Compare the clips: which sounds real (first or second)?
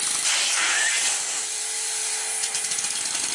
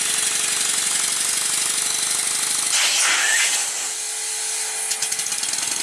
second